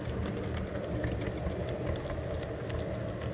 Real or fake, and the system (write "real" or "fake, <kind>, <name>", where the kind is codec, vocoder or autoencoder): real